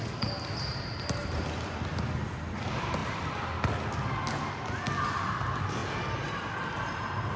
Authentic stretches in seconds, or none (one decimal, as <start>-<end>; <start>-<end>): 0.0-7.4